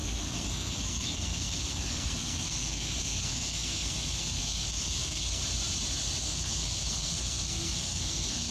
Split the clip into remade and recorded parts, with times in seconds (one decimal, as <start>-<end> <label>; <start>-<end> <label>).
0.0-5.4 remade; 5.4-6.2 recorded; 6.2-8.5 remade